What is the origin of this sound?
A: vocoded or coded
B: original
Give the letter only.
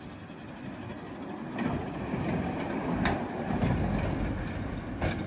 B